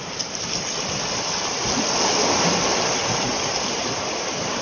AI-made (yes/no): no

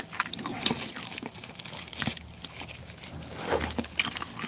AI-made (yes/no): no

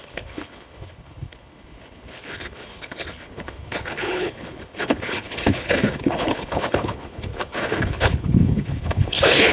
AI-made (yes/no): yes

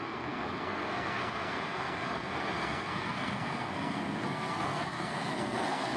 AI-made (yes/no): yes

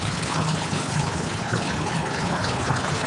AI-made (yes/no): yes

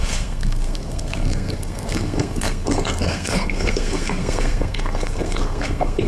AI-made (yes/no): yes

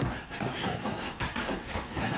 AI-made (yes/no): yes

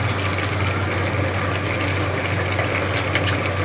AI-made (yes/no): no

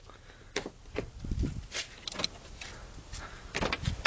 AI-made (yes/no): no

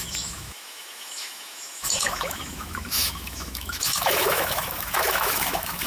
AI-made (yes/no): yes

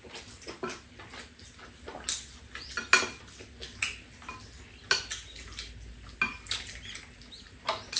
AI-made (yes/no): no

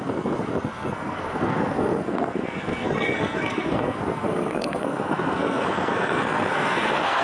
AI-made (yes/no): yes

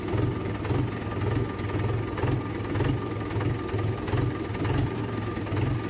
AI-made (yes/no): no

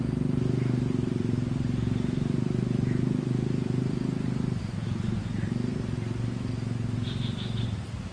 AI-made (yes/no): no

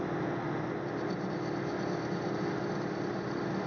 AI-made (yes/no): no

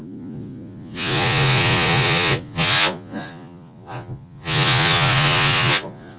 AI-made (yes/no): yes